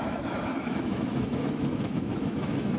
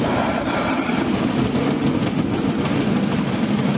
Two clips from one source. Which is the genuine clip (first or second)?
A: second